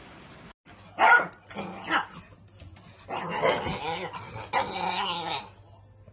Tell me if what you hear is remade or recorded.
recorded